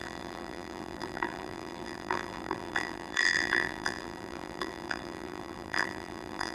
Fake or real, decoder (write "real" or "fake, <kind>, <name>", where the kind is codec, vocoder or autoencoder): fake, vocoder, BigVGAN v2